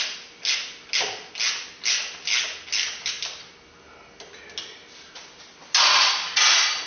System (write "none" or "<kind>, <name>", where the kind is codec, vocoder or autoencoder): none